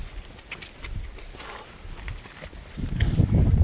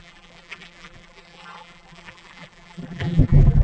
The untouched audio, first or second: first